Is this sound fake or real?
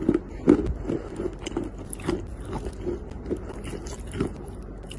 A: real